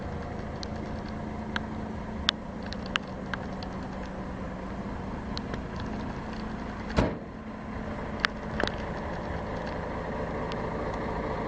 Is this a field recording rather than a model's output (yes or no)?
yes